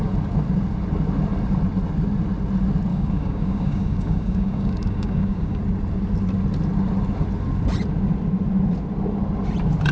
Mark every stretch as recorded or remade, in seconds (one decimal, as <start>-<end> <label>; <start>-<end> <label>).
0.0-2.9 recorded; 2.9-5.6 remade; 5.6-9.9 recorded